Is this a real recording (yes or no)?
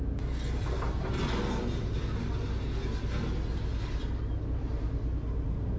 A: yes